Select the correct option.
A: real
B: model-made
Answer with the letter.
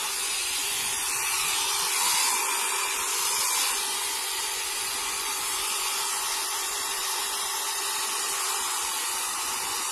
B